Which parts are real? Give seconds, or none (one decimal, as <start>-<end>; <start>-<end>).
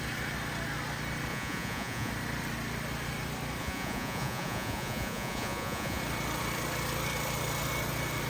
0.0-1.3; 2.1-3.6; 6.0-8.3